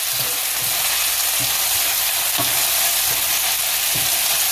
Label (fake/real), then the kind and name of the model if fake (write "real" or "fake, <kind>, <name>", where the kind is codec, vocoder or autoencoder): real